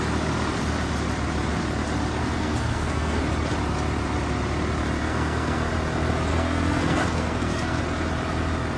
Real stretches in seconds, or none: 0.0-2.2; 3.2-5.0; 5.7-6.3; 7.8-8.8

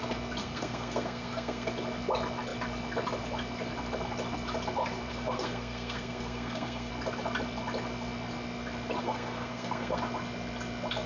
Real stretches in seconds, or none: 0.0-0.4; 1.7-5.1; 6.9-9.0; 10.0-11.1